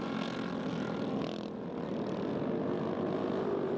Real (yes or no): yes